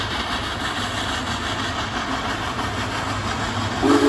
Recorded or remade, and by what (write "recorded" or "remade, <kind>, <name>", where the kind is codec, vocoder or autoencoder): recorded